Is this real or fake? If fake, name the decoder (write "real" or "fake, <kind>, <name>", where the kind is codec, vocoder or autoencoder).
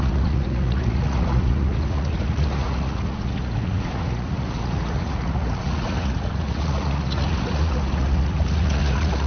fake, vocoder, Vocos